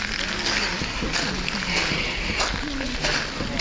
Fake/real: real